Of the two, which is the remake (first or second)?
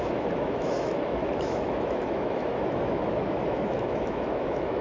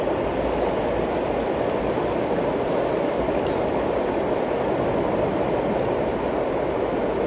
first